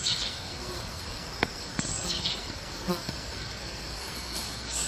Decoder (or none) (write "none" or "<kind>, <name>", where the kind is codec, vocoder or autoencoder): codec, SNAC